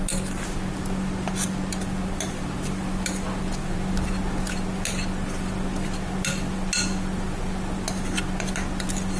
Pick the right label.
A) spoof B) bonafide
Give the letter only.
B